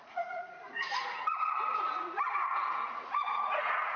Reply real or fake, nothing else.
fake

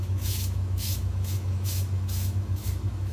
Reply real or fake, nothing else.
fake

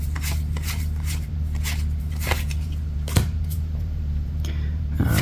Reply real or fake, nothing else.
fake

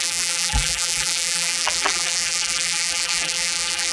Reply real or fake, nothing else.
fake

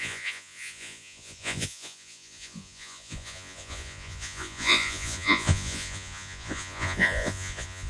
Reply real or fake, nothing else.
fake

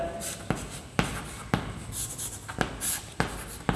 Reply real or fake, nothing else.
real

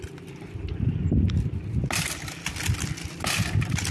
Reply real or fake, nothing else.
real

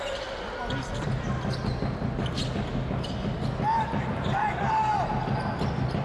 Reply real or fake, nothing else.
real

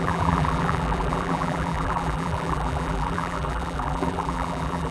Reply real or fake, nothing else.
fake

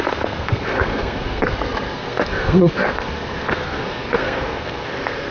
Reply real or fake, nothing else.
fake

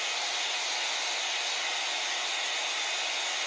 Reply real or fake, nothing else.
real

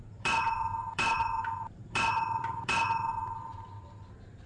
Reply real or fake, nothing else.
fake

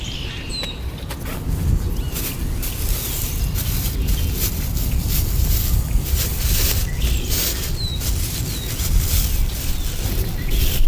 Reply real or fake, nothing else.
real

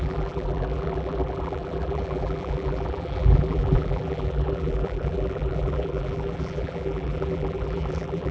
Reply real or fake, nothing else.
fake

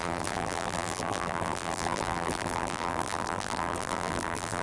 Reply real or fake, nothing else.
fake